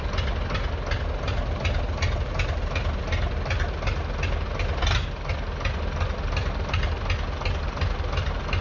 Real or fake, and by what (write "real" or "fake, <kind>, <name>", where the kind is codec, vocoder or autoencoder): real